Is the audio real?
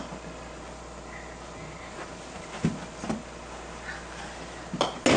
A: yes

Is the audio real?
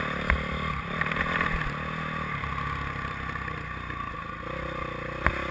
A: yes